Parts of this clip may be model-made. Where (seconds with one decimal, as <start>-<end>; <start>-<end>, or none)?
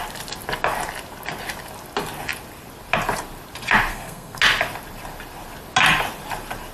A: 3.9-4.4